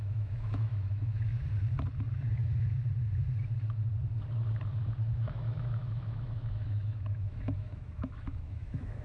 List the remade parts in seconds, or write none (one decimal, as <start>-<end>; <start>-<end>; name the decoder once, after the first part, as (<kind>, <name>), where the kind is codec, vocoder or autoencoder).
0.0-1.3 (autoencoder, DAC-VAE); 5.1-9.0